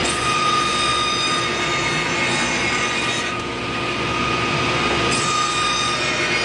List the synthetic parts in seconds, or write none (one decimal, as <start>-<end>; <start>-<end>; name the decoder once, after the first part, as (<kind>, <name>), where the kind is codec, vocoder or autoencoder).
0.0-6.4 (vocoder, Vocos)